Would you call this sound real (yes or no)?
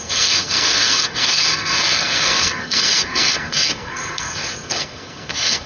no